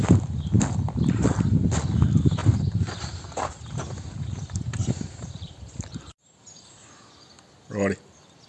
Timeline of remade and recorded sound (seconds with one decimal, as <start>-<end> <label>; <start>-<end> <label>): 0.0-2.4 recorded; 2.4-6.8 remade; 6.8-8.5 recorded